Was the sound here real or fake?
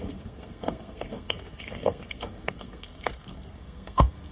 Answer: fake